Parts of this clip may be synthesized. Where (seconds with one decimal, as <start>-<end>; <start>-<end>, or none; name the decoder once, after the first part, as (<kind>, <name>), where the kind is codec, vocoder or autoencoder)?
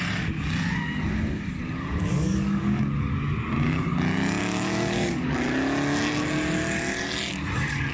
2.0-2.8 (codec, DAC); 4.4-5.5